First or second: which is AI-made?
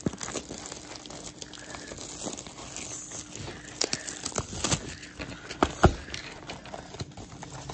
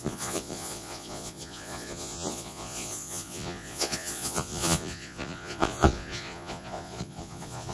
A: second